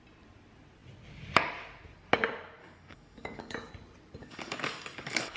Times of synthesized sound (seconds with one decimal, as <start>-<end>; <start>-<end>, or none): 2.6-3.7; 4.2-5.4